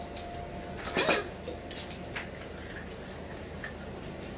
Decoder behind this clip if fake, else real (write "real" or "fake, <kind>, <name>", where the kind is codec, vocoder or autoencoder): real